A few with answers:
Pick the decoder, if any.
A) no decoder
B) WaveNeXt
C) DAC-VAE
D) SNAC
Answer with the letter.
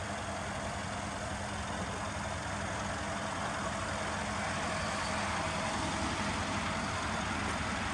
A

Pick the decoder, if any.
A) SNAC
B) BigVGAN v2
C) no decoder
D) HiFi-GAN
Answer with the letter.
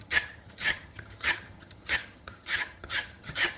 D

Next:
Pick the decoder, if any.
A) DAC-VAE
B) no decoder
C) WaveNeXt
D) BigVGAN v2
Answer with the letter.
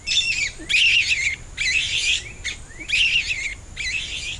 B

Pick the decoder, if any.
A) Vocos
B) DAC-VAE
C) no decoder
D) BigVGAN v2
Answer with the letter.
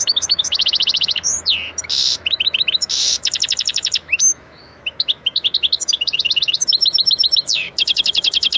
B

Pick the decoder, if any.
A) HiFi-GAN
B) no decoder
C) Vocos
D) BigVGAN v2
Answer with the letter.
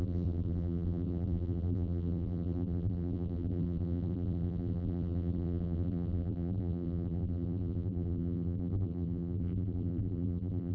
D